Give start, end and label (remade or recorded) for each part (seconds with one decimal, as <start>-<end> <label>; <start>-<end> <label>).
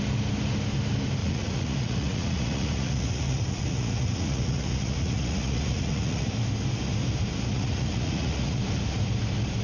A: 0.0-1.2 recorded; 1.2-6.3 remade; 6.3-7.5 recorded; 7.5-8.6 remade; 8.6-9.6 recorded